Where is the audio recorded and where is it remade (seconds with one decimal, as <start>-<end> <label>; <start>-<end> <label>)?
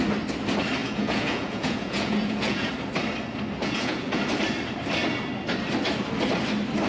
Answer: 0.0-0.8 recorded; 0.8-2.7 remade; 2.7-3.6 recorded; 3.6-4.2 remade; 4.2-6.9 recorded